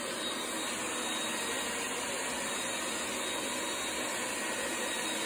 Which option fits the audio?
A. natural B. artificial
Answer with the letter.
A